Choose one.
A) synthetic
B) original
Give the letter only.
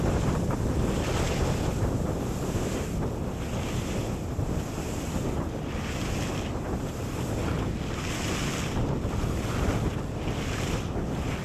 B